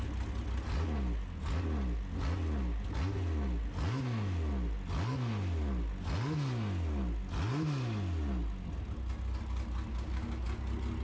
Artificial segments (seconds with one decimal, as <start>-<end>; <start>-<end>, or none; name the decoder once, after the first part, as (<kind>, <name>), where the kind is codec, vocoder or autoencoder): 9.9-10.4 (codec, DAC)